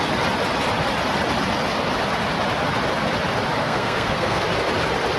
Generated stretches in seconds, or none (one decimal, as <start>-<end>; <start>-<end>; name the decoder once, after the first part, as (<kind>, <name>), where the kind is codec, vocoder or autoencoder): 3.6-4.4 (codec, SNAC)